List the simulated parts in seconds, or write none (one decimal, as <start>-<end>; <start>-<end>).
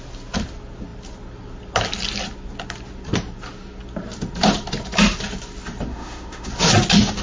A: 5.9-6.5